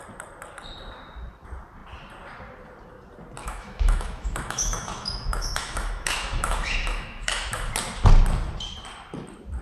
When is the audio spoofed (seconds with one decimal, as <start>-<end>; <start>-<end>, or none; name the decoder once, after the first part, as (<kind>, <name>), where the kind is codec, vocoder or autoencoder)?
3.4-7.7 (autoencoder, DAC-VAE)